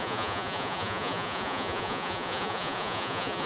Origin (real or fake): fake